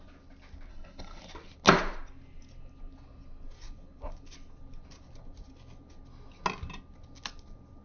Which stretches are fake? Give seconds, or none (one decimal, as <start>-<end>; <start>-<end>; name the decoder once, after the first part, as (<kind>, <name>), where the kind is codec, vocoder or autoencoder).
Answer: 0.7-1.2 (codec, HILCodec)